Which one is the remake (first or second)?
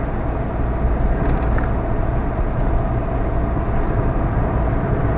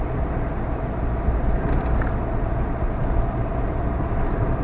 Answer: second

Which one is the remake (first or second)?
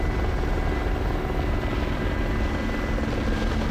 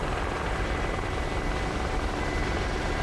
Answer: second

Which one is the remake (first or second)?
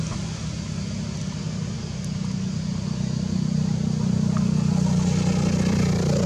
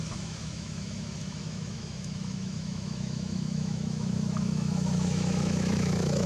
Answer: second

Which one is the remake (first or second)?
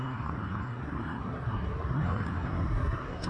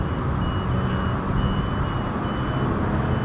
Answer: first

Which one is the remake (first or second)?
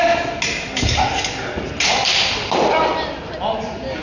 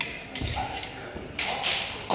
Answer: second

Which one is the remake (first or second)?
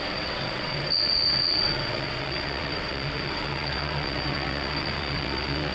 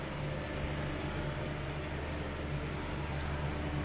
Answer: first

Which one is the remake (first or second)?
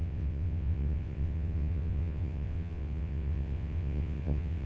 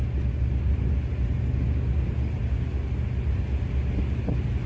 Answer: first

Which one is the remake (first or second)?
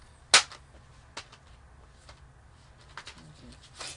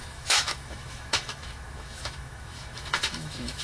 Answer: second